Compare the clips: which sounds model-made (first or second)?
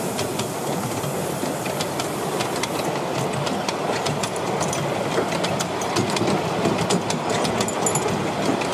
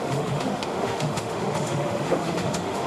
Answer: second